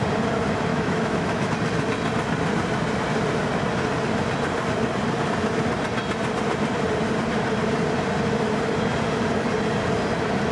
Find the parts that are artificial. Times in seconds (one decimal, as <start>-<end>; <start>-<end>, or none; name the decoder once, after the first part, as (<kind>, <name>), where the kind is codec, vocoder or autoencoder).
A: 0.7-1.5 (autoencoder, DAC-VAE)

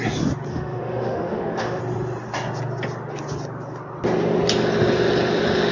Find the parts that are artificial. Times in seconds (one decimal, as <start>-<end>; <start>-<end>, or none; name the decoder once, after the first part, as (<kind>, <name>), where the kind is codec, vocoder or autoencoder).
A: 0.5-1.8 (autoencoder, DAC-VAE)

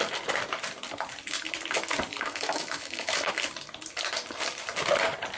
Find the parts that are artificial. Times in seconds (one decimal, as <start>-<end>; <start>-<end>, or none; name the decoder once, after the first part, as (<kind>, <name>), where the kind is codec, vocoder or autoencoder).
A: 2.1-3.3 (autoencoder, DAC-VAE)